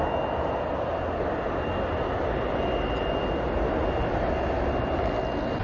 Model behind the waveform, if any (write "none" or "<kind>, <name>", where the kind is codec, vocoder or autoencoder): none